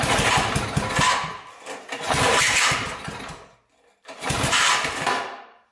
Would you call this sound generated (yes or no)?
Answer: no